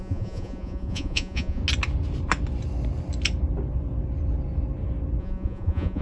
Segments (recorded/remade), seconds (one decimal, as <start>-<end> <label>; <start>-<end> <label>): 0.0-1.6 remade; 1.6-5.2 recorded; 5.2-6.0 remade